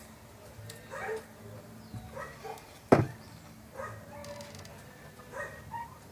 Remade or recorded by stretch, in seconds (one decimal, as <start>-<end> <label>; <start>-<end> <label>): 0.0-6.1 recorded